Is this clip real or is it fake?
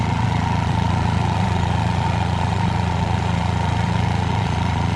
fake